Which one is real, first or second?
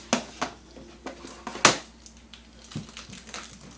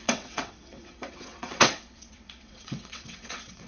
first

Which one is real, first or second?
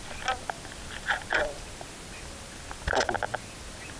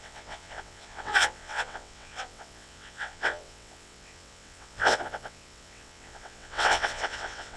first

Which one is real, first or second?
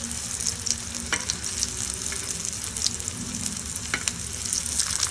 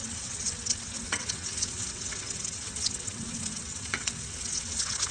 first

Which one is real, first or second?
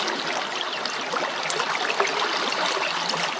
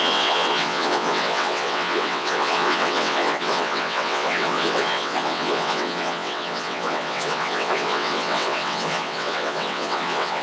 first